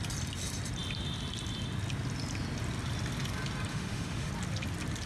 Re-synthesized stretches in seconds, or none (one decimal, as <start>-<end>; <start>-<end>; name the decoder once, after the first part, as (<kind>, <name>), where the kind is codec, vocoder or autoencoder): 3.7-4.3 (autoencoder, DAC-VAE)